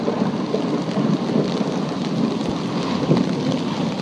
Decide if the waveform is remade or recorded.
recorded